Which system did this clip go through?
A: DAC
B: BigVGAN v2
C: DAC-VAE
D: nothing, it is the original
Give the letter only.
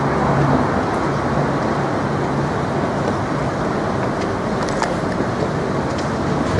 D